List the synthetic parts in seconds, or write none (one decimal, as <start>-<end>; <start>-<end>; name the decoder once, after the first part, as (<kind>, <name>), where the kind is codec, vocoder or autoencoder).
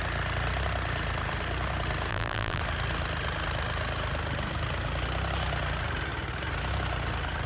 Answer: 2.1-2.6 (vocoder, BigVGAN v2)